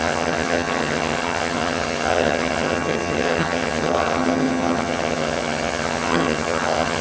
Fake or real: fake